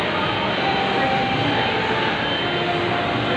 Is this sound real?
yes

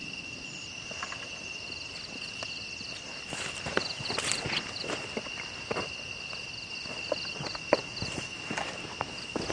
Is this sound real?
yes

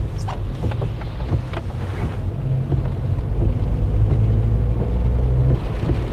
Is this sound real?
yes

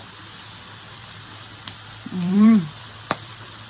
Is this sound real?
no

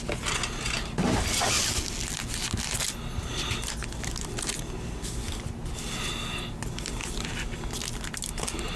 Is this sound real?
yes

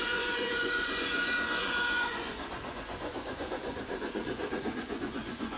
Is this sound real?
no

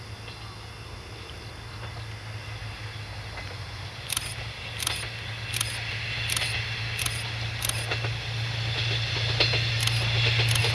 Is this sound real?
yes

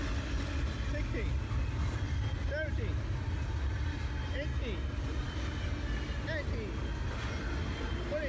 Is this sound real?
yes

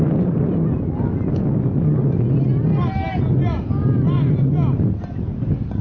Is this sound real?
yes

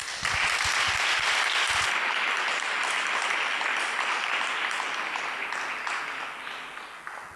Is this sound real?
yes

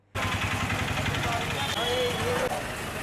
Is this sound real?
yes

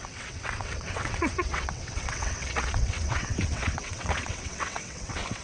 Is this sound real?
no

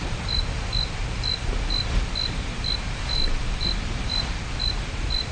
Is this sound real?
yes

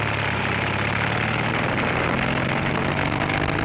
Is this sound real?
yes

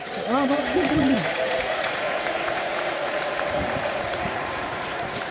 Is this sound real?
no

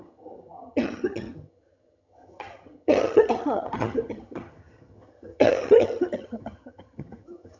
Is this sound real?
no